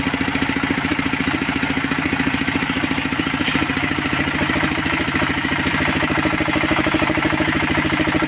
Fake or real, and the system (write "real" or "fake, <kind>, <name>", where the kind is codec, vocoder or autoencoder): fake, vocoder, BigVGAN v2